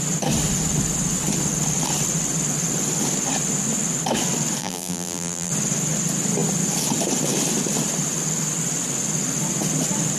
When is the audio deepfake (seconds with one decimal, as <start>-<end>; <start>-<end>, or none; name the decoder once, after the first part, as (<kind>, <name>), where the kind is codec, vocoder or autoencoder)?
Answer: 4.6-5.5 (vocoder, BigVGAN v2)